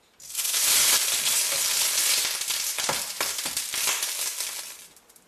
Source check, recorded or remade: recorded